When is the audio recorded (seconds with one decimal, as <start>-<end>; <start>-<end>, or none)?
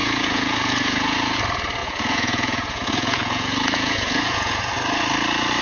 1.4-1.8; 4.7-5.6